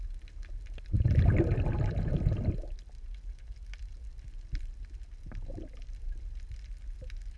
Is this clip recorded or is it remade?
recorded